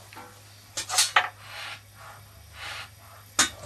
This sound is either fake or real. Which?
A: real